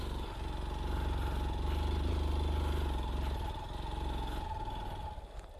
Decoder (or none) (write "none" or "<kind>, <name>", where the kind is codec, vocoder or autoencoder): none